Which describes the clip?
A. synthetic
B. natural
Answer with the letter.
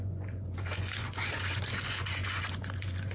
A